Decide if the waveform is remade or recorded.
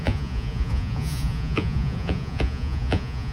remade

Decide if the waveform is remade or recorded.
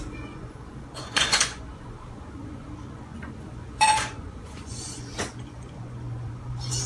remade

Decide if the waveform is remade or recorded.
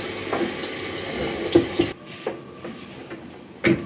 recorded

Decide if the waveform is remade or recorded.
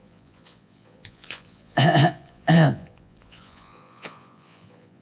remade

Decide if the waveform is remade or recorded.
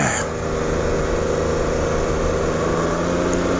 recorded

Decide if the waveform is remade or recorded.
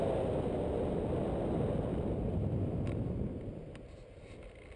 recorded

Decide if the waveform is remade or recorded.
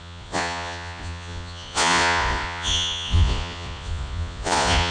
remade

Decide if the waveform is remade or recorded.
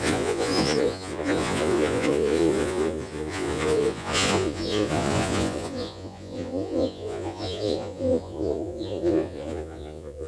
remade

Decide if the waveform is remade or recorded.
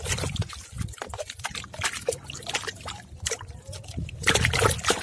recorded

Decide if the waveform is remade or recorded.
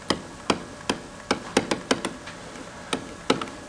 recorded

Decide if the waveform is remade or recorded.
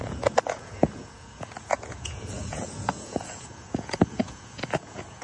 remade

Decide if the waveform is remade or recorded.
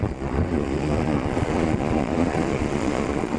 remade